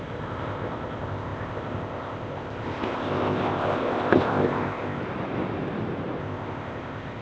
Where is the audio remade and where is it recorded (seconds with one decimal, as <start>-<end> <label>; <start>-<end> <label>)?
0.0-5.0 remade; 5.0-6.2 recorded; 6.2-7.2 remade